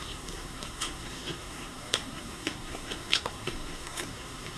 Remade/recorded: remade